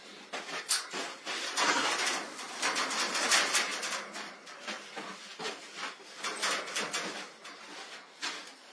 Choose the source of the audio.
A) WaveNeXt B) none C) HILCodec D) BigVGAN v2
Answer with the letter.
B